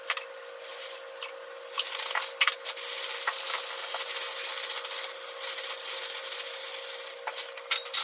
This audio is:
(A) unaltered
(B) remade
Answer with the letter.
A